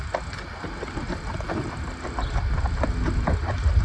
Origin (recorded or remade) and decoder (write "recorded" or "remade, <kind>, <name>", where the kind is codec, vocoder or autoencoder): recorded